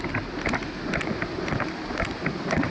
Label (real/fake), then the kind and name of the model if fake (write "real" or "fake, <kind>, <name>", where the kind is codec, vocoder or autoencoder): real